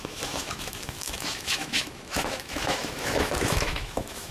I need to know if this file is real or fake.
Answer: fake